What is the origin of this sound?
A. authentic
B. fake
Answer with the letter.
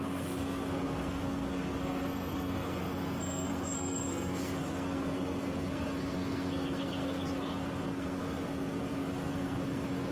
B